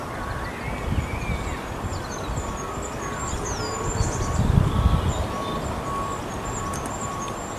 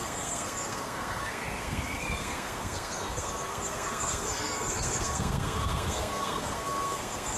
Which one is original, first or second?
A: first